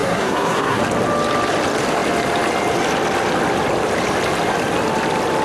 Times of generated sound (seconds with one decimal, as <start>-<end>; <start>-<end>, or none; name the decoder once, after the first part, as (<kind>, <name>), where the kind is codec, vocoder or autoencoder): 0.0-0.8 (codec, SNAC)